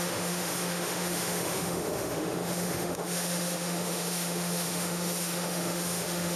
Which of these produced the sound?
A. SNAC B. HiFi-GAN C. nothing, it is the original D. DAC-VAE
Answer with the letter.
D